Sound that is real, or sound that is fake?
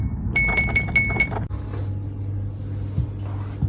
real